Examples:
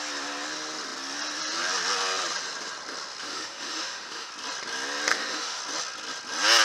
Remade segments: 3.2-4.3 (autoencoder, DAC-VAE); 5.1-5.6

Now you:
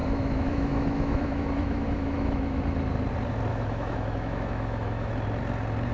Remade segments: 0.0-2.6 (autoencoder, DAC-VAE); 3.5-5.1

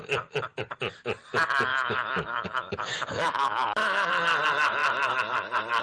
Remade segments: 1.7-4.1 (autoencoder, DAC-VAE)

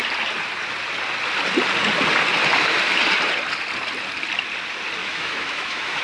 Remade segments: 5.0-6.0 (autoencoder, DAC-VAE)

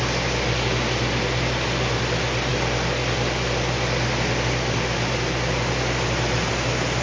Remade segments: none

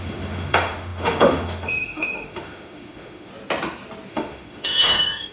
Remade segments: 0.0-3.3 (autoencoder, DAC-VAE); 4.1-5.3

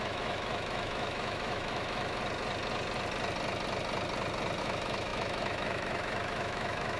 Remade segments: 0.0-2.2 (autoencoder, DAC-VAE); 4.6-7.0

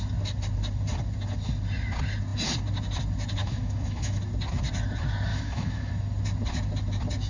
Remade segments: 3.4-4.2 (autoencoder, DAC-VAE); 5.3-5.9